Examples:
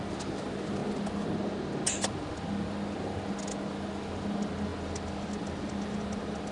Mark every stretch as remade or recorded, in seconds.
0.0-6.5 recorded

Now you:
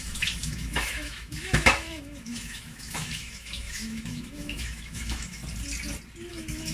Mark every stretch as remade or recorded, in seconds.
0.0-5.4 remade; 5.4-6.3 recorded; 6.3-6.7 remade